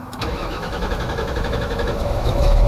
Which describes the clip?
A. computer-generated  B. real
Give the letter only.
A